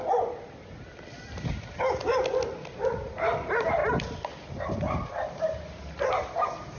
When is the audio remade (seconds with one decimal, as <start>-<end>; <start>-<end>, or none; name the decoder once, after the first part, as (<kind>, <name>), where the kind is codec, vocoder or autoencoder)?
none

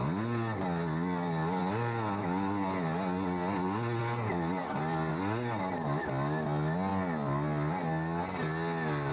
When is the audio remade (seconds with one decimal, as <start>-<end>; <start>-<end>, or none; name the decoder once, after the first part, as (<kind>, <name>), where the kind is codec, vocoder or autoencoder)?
none

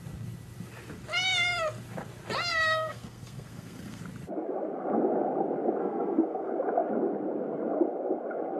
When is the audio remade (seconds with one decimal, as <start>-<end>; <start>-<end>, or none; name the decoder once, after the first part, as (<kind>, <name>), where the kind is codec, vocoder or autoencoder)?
2.5-4.0 (codec, SNAC); 5.8-6.5

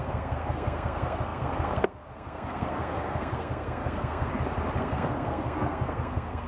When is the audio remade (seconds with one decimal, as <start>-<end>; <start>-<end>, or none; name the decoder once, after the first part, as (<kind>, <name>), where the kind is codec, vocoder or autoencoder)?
0.0-4.3 (codec, SNAC); 4.8-6.5

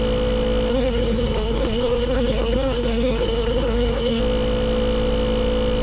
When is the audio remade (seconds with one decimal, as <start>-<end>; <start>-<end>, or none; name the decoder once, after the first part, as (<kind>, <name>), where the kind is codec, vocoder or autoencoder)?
0.7-4.2 (codec, SNAC)

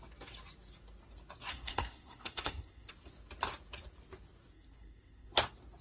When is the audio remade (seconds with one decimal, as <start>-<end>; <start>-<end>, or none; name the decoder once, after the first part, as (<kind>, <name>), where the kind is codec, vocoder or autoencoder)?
1.5-2.9 (codec, SNAC); 4.5-5.3

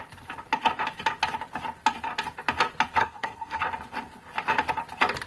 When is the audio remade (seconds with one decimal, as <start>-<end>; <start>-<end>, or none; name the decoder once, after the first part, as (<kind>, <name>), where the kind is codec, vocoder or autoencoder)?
3.0-3.6 (codec, SNAC)